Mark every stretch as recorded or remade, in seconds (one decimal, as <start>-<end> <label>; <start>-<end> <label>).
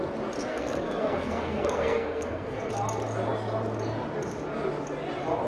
0.0-0.5 recorded; 0.5-2.7 remade; 2.7-5.5 recorded